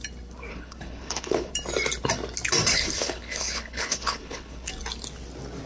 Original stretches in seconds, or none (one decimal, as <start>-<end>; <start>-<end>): 0.0-0.5; 1.5-2.7; 4.7-5.7